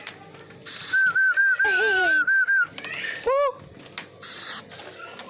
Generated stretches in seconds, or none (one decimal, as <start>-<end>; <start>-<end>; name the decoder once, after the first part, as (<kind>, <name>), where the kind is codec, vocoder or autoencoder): none